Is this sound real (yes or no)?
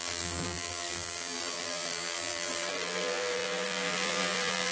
no